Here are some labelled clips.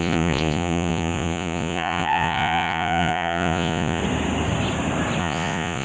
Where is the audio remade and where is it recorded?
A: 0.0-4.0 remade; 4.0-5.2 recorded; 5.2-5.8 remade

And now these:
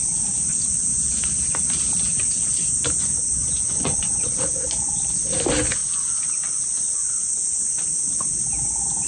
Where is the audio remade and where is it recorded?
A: 0.0-3.4 recorded; 3.4-4.3 remade; 4.3-9.1 recorded